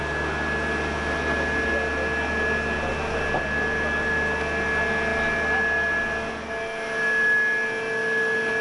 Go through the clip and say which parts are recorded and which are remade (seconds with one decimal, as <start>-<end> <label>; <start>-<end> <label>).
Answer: 0.0-8.6 recorded